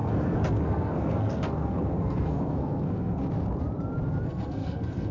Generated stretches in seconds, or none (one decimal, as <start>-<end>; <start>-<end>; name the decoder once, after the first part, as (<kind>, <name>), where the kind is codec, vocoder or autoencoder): 0.0-3.2 (codec, SNAC); 4.2-5.1